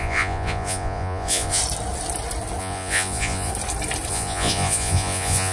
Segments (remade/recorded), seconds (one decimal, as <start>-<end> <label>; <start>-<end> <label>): 0.0-1.6 remade; 1.6-2.6 recorded; 2.6-3.5 remade; 3.5-4.1 recorded; 4.1-5.5 remade